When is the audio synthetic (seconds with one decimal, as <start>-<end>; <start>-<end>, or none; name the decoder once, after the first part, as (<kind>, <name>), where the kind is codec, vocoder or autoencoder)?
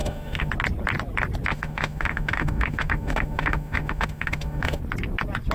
0.0-0.5 (autoencoder, DAC-VAE); 1.5-4.8